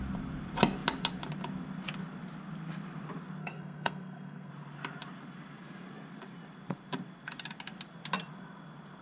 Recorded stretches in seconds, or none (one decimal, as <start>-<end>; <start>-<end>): 0.0-3.4; 4.5-9.0